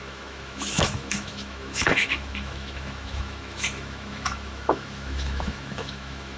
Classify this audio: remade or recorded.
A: remade